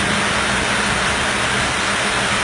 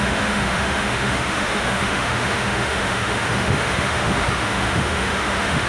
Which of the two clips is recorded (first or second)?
first